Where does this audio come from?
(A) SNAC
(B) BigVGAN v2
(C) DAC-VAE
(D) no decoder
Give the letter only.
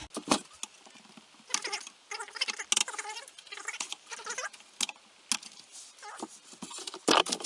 D